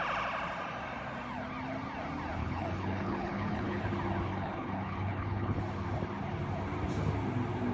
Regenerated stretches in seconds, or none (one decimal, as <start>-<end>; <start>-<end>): 2.4-3.8; 4.3-5.6